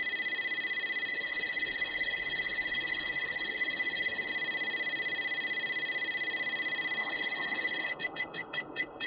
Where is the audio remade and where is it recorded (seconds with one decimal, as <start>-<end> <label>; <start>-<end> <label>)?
0.0-1.1 recorded; 1.1-4.3 remade; 4.3-7.0 recorded; 7.0-9.1 remade